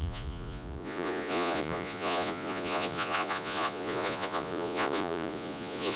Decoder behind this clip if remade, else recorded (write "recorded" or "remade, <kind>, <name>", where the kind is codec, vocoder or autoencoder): remade, vocoder, Vocos